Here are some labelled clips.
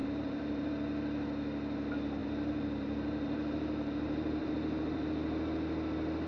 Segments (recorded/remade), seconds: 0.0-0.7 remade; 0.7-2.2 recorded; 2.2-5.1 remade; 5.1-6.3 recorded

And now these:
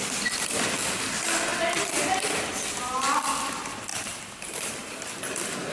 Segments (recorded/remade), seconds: 0.0-3.9 recorded; 3.9-5.2 remade; 5.2-5.7 recorded

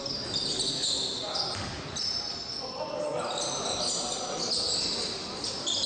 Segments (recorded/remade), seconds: 0.0-5.9 recorded

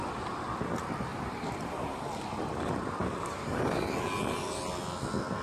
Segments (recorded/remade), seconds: 0.0-1.1 recorded; 1.1-2.0 remade; 2.0-3.0 recorded; 3.0-3.7 remade; 3.7-5.4 recorded

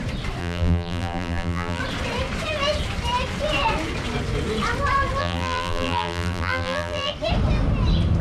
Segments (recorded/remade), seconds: 0.0-0.4 recorded; 0.4-1.8 remade; 1.8-5.2 recorded; 5.2-7.1 remade; 7.1-8.2 recorded